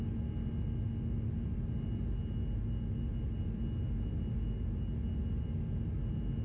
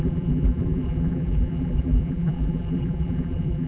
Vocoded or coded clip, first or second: second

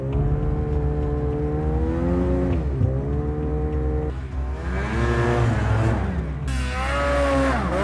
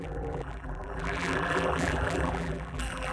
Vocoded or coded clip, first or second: second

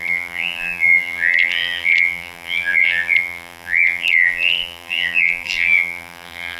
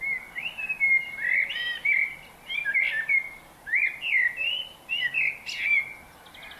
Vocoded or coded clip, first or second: first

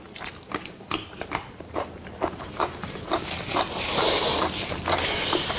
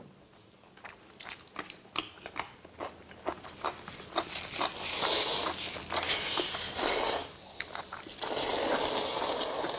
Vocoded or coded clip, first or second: first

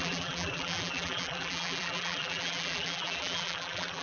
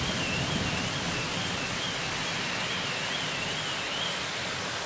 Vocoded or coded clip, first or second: first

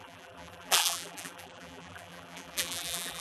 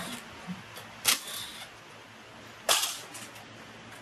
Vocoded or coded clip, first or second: first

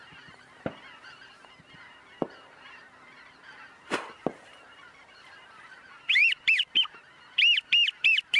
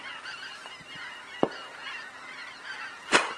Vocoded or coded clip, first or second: first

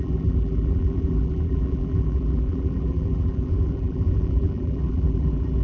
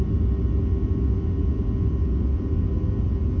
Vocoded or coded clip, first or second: first